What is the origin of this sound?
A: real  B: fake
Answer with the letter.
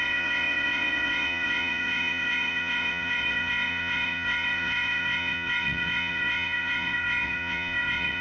B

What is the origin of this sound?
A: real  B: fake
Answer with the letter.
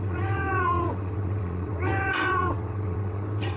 B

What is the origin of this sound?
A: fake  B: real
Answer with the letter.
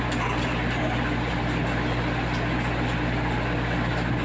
B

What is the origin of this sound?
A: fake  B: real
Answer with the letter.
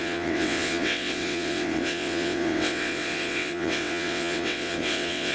A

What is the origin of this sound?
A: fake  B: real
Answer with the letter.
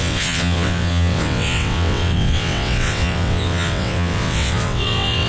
A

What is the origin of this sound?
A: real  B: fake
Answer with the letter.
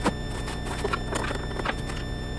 A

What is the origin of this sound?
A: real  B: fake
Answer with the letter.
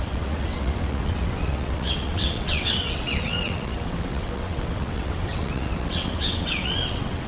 B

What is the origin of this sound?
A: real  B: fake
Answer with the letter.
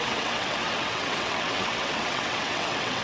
B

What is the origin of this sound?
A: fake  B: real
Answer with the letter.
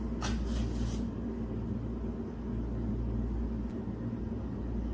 B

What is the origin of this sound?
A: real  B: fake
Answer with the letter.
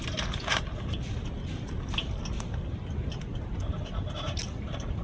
A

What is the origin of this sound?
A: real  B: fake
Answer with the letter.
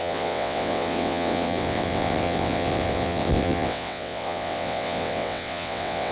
B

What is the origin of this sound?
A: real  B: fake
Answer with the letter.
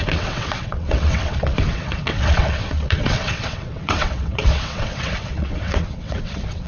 B